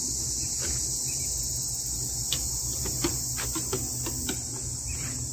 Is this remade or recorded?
recorded